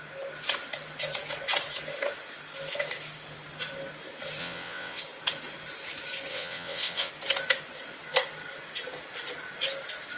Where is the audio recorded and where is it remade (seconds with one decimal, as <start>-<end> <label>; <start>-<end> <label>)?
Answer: 0.0-4.4 recorded; 4.4-5.0 remade; 5.0-6.3 recorded; 6.3-7.1 remade; 7.1-10.2 recorded